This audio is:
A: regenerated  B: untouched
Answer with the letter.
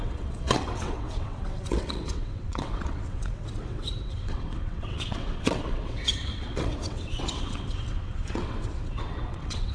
A